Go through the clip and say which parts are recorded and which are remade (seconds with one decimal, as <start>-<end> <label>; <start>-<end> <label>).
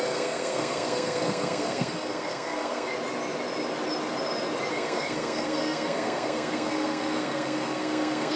0.0-2.9 remade; 2.9-4.7 recorded; 4.7-8.4 remade